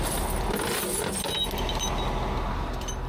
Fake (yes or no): no